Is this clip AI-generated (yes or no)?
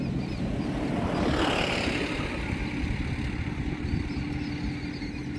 no